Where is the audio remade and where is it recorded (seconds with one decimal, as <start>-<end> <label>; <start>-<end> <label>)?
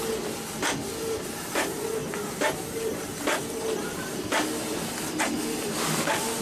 0.0-6.4 recorded